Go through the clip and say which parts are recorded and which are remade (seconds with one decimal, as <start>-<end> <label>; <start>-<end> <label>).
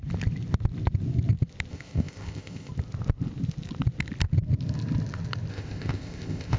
0.0-1.7 recorded; 1.7-2.7 remade; 2.7-5.5 recorded; 5.5-6.6 remade